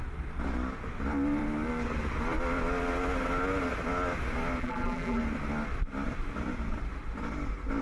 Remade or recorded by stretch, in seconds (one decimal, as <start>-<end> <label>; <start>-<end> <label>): 0.0-4.6 recorded; 4.6-5.2 remade; 5.2-7.8 recorded

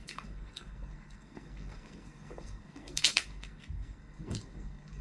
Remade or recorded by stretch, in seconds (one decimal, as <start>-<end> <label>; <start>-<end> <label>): 0.0-5.0 remade

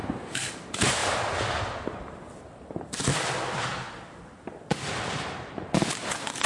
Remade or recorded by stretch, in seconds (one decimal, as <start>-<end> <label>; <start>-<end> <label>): 0.0-0.5 remade; 0.5-6.5 recorded

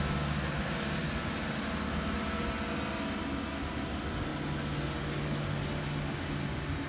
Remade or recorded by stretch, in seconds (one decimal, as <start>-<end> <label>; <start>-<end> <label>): 0.0-6.9 recorded

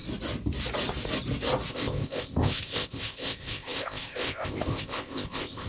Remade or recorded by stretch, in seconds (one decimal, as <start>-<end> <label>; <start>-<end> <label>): 0.0-1.7 recorded; 1.7-5.7 remade

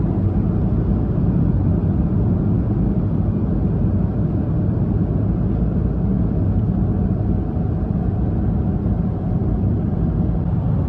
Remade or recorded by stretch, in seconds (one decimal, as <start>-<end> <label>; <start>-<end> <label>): 0.0-8.7 recorded; 8.7-10.0 remade; 10.0-10.9 recorded

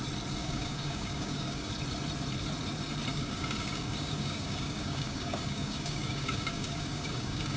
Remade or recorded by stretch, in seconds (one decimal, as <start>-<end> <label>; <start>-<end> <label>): 0.0-0.4 recorded; 0.4-1.7 remade; 1.7-3.1 recorded; 3.1-7.6 remade